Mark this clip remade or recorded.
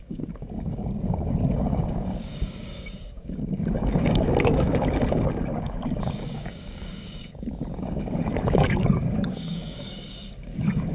remade